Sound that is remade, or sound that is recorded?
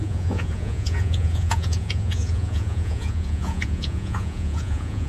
remade